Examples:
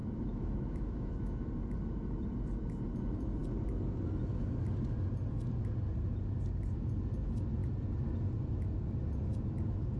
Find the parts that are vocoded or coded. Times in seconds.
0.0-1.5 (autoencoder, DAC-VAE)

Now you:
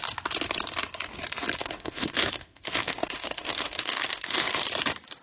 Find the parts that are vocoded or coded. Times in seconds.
1.6-4.7 (autoencoder, DAC-VAE)

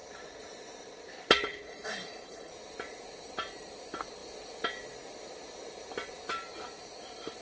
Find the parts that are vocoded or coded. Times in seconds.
1.5-2.5 (codec, HILCodec)

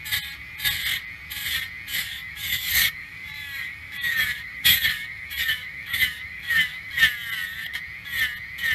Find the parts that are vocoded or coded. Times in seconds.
2.0-7.0 (codec, DAC)

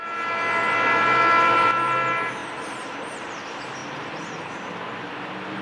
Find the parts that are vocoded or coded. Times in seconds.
2.4-3.4 (vocoder, BigVGAN v2); 3.8-4.6

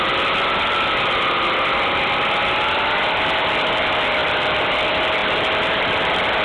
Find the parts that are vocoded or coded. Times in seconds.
4.2-4.7 (vocoder, BigVGAN v2); 5.2-6.4

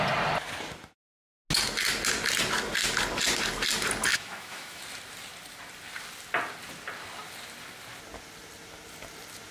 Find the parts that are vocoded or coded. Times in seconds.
4.1-4.8 (autoencoder, DAC-VAE)

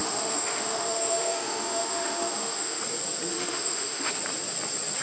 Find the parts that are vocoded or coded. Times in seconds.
0.0-2.8 (autoencoder, DAC-VAE); 3.3-4.1